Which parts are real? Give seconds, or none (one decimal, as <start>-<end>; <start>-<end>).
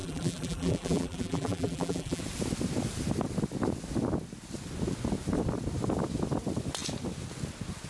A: 2.2-7.9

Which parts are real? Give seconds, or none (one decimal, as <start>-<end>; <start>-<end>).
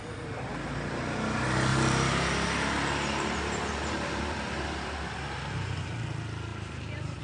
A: 0.0-1.7; 5.1-6.5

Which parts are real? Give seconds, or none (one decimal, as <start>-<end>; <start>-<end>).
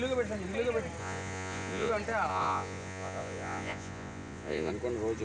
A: 0.0-1.0; 1.9-2.3; 4.7-5.2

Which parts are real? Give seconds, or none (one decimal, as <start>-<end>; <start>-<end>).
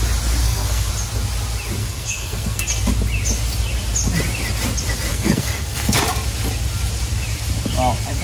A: 0.0-0.4; 0.9-1.8; 2.6-5.1; 6.0-8.2